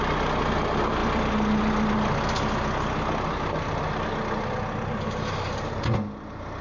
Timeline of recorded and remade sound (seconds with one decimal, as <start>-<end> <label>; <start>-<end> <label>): 0.0-6.6 recorded